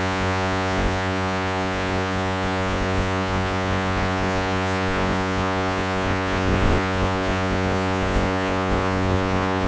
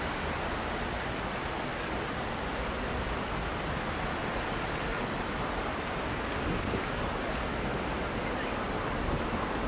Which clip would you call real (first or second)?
second